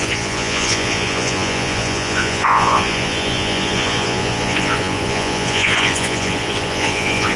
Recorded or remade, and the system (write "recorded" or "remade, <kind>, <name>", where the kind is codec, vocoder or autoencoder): remade, vocoder, Vocos